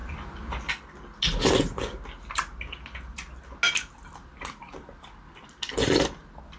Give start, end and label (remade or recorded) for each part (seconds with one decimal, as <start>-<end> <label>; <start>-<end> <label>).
0.0-6.6 recorded